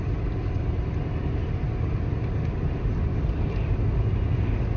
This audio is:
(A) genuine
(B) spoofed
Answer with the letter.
A